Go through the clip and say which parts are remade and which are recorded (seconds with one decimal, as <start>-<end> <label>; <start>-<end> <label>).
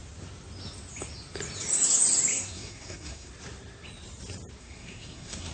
0.0-2.3 recorded; 2.3-3.3 remade; 3.3-4.6 recorded; 4.6-5.5 remade